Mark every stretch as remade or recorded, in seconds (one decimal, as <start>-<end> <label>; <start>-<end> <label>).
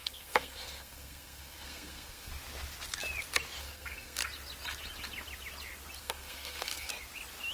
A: 0.0-2.3 remade; 2.3-3.6 recorded; 3.6-4.2 remade; 4.2-6.0 recorded; 6.0-6.9 remade; 6.9-7.5 recorded